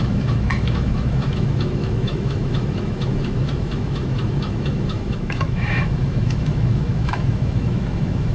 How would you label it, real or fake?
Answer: fake